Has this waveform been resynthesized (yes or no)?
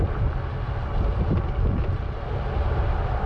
no